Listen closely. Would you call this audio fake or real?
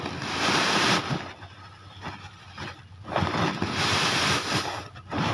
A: real